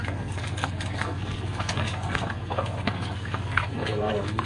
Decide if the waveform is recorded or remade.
remade